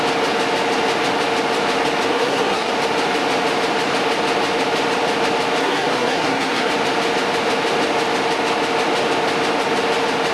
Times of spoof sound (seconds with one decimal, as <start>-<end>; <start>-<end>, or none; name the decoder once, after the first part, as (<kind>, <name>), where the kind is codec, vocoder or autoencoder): 2.1-2.7 (codec, SNAC); 5.6-6.7